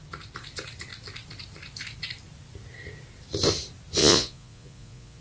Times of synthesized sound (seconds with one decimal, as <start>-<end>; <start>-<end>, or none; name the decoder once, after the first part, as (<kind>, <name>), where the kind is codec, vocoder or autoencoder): 4.0-5.2 (vocoder, Vocos)